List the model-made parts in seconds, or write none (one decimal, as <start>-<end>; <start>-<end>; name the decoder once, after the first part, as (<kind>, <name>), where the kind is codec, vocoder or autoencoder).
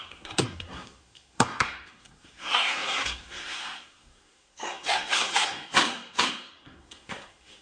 0.0-7.6 (codec, SNAC)